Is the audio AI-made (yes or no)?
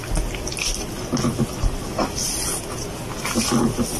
no